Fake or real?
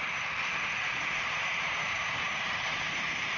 fake